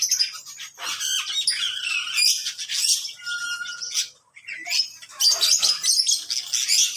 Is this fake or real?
real